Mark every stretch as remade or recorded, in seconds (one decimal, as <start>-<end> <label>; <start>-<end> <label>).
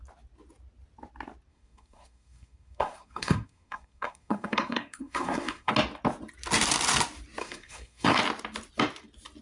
0.0-1.5 recorded; 1.5-5.7 remade; 5.7-7.4 recorded; 7.4-8.2 remade; 8.2-9.4 recorded